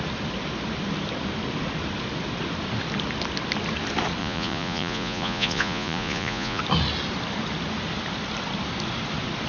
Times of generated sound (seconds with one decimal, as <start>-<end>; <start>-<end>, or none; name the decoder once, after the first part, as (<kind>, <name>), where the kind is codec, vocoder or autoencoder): 4.2-6.6 (vocoder, Vocos)